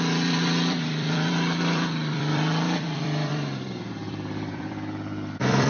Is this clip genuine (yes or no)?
no